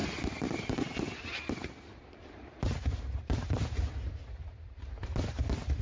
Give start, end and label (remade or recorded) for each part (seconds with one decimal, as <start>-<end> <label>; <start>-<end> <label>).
0.0-1.2 recorded; 1.2-5.0 remade; 5.0-5.8 recorded